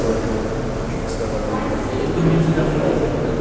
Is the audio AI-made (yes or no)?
no